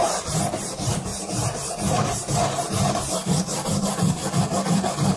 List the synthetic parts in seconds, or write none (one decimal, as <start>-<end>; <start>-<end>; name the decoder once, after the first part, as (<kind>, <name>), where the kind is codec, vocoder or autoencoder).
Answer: 0.0-4.2 (vocoder, BigVGAN v2); 4.8-5.2